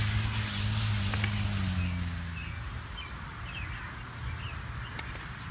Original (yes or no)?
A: yes